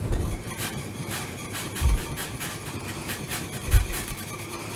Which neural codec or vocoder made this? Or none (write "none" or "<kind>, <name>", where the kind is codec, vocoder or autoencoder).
vocoder, BigVGAN v2